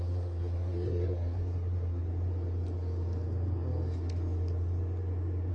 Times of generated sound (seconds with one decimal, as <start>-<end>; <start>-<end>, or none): 0.0-2.0